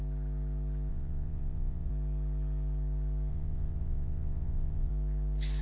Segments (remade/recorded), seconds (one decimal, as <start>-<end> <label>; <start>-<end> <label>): 0.0-0.9 recorded; 0.9-1.9 remade; 1.9-3.3 recorded; 3.3-4.9 remade; 4.9-5.6 recorded